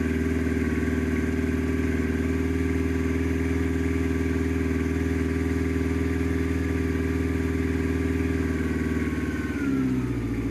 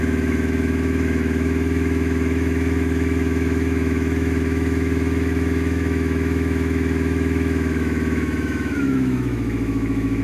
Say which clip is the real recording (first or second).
first